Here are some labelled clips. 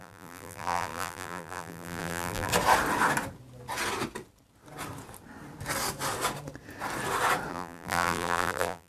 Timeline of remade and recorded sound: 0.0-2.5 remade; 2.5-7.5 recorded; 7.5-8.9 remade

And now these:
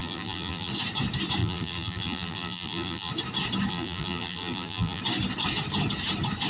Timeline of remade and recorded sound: 0.0-0.7 remade; 0.7-1.4 recorded; 1.4-3.1 remade; 3.1-3.7 recorded; 3.7-5.0 remade; 5.0-6.5 recorded

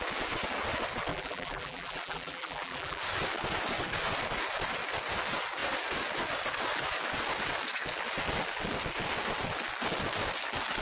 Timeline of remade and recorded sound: 0.0-1.1 recorded; 1.1-3.0 remade; 3.0-10.8 recorded

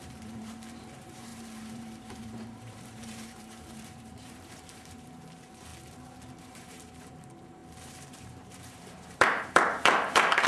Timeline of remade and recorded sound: 0.0-5.7 remade; 5.7-6.4 recorded; 6.4-10.5 remade